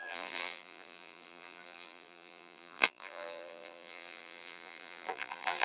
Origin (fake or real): fake